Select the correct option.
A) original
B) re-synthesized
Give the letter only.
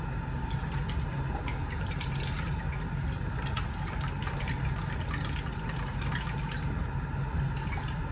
A